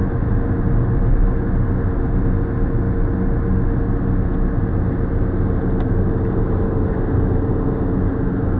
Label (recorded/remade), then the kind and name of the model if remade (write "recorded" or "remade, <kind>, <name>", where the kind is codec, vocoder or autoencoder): recorded